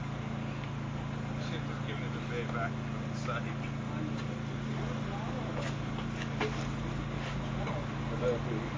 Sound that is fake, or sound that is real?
real